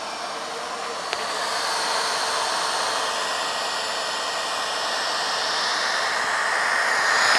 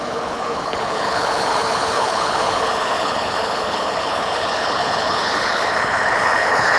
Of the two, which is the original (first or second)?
first